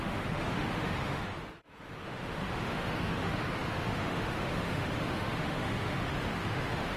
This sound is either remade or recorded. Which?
remade